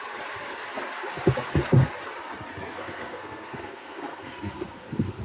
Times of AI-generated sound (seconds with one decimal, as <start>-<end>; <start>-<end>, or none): 2.7-5.2